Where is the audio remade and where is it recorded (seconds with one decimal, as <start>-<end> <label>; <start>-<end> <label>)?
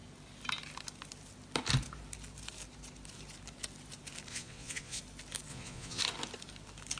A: 0.0-4.3 recorded; 4.3-5.0 remade; 5.0-5.5 recorded; 5.5-6.0 remade; 6.0-7.0 recorded